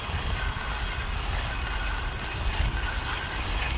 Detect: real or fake real